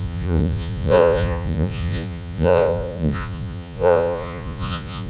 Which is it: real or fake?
fake